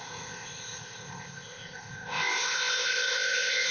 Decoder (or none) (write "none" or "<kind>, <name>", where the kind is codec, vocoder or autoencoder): codec, ZipCodec